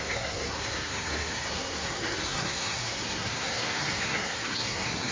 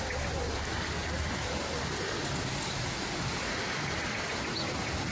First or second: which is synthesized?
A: first